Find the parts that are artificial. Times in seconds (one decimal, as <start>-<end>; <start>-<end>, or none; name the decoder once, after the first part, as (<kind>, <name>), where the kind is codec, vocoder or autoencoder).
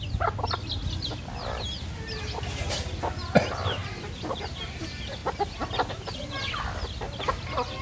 none